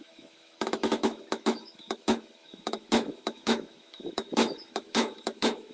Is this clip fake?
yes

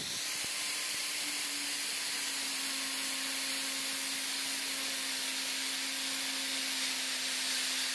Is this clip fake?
yes